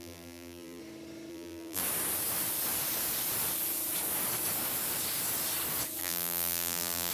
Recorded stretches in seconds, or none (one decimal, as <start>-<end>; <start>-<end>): 0.8-1.3; 1.8-6.0